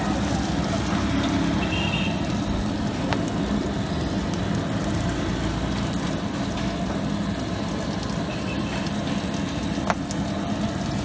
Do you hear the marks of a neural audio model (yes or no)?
no